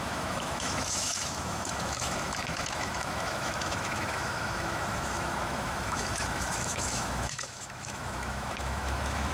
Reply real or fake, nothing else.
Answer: fake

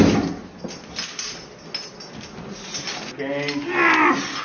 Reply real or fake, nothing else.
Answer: real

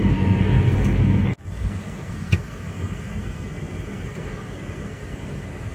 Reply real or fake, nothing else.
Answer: fake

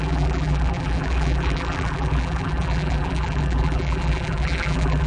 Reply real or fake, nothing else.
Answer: fake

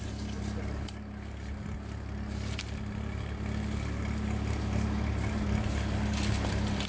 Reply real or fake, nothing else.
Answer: real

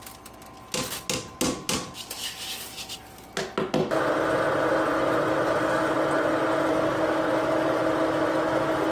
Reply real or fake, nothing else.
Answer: real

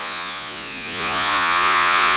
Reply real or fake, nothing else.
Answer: fake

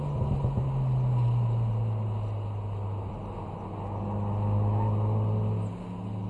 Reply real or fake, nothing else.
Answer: real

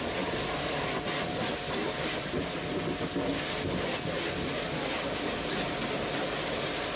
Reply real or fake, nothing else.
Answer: real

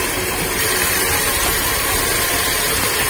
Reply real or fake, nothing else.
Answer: fake